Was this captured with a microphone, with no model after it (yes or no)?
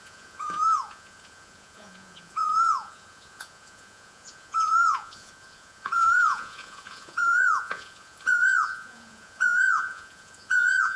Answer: no